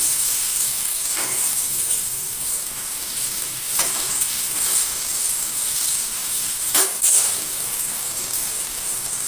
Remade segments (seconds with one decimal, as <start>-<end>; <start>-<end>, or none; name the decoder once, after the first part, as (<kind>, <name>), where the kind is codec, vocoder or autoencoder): 0.0-9.3 (codec, DAC)